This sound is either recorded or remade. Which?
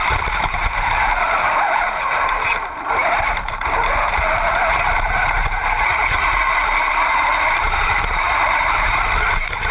remade